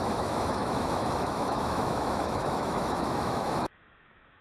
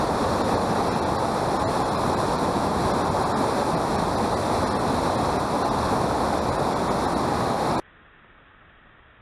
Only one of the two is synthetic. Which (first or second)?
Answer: first